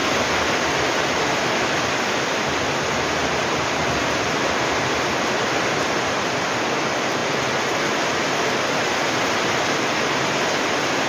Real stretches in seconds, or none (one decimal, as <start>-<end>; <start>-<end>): 0.0-3.2; 4.9-11.1